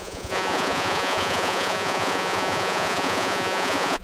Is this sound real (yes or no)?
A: no